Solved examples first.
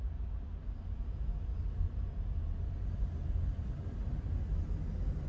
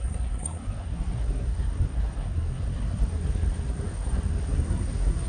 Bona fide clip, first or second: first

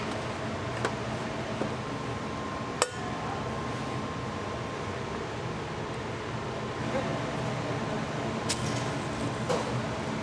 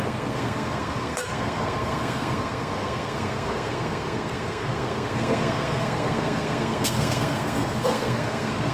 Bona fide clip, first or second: first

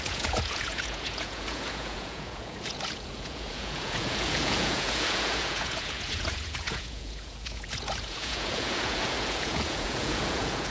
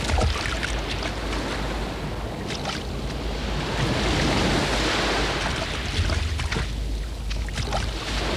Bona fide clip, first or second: second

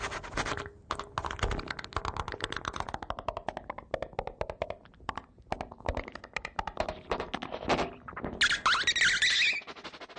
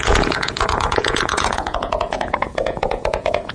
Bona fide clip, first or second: first